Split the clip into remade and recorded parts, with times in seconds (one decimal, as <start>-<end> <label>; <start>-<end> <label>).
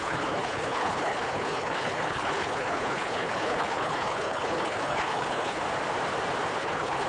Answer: 0.0-5.6 remade; 5.6-6.6 recorded; 6.6-7.1 remade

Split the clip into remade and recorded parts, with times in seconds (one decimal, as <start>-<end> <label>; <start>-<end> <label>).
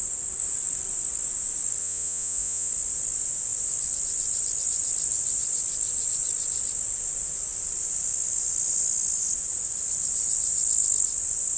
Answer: 0.0-1.8 recorded; 1.8-2.7 remade; 2.7-11.6 recorded